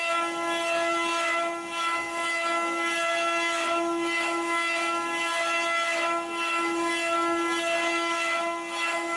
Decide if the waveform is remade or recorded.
recorded